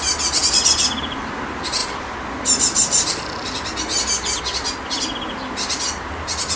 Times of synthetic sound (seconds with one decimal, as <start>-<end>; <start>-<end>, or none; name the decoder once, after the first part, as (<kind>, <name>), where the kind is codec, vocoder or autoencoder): none